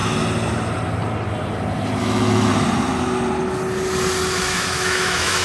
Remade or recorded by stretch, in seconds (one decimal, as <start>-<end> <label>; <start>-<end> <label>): 0.0-2.0 recorded; 2.0-2.5 remade; 2.5-4.4 recorded; 4.4-5.4 remade